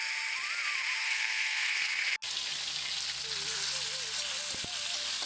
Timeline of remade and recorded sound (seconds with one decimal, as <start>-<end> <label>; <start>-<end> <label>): 0.0-1.0 recorded; 1.0-1.7 remade; 1.7-5.3 recorded